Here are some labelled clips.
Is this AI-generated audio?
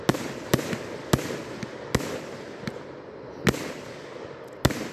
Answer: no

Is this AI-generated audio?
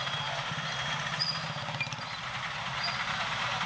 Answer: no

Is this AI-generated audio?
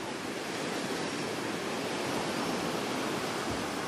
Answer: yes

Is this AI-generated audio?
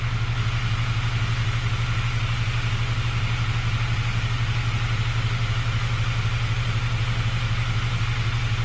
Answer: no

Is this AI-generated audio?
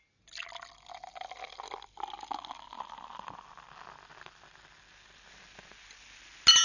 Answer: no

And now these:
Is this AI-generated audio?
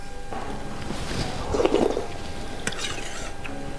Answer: no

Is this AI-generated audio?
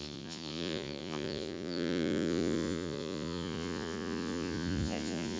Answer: yes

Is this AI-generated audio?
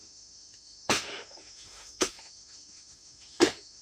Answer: yes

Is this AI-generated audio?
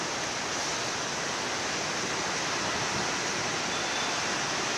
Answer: no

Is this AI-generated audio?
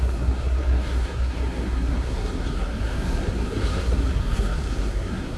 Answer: yes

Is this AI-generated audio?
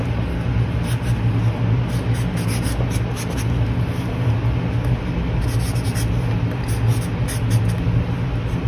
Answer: no